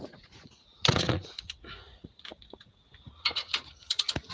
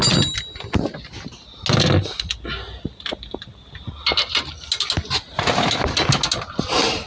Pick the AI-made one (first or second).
first